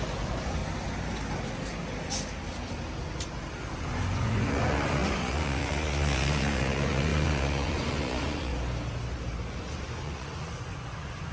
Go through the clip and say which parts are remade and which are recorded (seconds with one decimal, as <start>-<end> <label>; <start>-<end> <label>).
0.0-0.6 remade; 0.6-3.6 recorded; 3.6-8.5 remade; 8.5-9.5 recorded; 9.5-11.3 remade